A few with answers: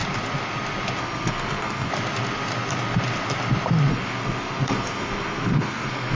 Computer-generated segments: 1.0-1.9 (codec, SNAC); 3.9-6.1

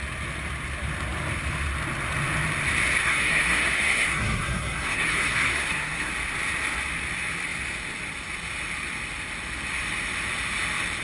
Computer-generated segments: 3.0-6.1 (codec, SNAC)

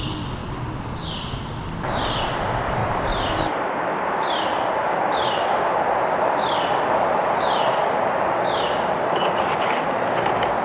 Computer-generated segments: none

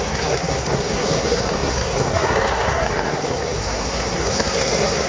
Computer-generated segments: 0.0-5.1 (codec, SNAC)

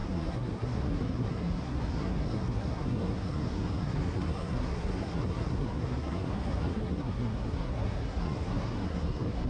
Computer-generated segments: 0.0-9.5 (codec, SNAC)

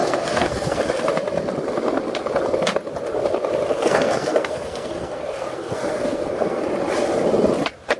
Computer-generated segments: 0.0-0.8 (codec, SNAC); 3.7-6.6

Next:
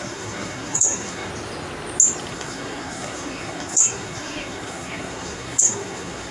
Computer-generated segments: 0.0-1.3 (codec, SNAC); 2.3-6.3